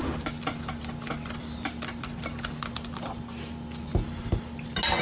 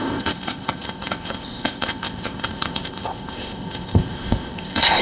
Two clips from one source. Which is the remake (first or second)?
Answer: second